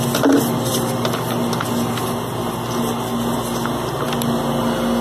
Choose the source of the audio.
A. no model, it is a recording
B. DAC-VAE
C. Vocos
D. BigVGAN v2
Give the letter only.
A